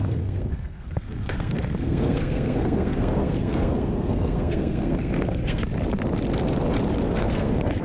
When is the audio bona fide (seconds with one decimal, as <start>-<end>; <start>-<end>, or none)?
5.6-7.0

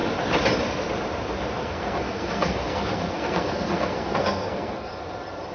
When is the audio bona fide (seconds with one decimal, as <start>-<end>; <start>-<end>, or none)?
0.0-1.6; 4.9-5.5

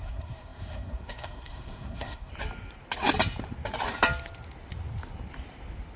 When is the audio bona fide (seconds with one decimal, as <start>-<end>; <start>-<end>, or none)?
2.3-6.0

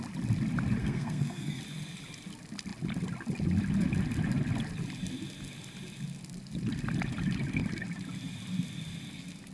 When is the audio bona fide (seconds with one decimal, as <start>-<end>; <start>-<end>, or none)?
0.0-0.8; 1.6-9.5

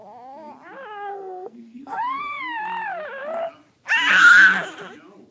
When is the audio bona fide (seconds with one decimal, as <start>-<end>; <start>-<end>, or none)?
0.0-1.1; 2.4-5.3

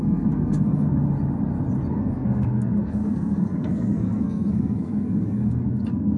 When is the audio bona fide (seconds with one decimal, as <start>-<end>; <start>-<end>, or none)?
0.9-1.9